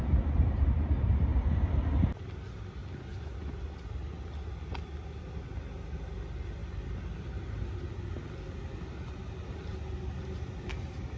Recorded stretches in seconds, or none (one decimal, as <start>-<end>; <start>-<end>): 0.0-11.2